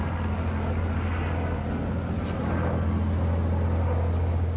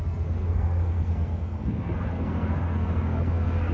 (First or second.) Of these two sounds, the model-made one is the second